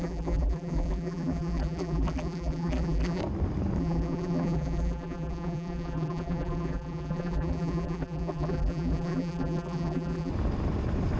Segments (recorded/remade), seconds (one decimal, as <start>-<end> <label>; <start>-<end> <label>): 0.0-3.2 remade; 3.2-3.8 recorded; 3.8-10.3 remade; 10.3-11.2 recorded